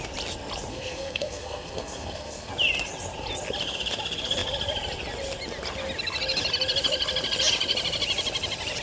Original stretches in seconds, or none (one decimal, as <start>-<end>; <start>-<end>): 0.0-0.7; 2.5-8.8